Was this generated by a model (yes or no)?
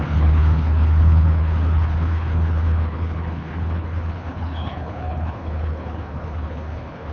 yes